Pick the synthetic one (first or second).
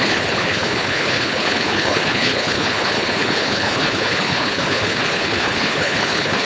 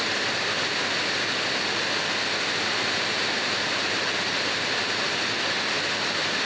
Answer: first